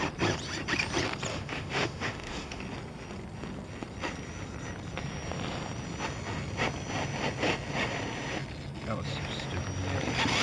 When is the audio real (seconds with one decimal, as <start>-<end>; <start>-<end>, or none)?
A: 0.0-1.3; 2.6-10.4